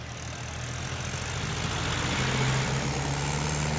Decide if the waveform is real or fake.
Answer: real